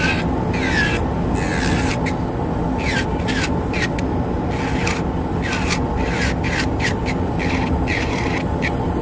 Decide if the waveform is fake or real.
real